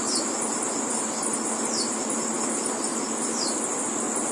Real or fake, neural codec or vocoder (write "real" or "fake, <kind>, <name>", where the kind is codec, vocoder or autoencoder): real